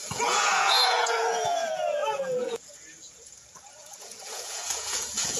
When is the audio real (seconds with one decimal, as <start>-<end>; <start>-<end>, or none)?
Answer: none